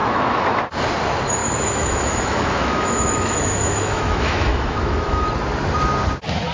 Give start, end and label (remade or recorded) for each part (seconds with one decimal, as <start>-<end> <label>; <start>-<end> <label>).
0.0-0.6 remade; 0.6-1.4 recorded; 1.4-5.3 remade; 5.3-6.5 recorded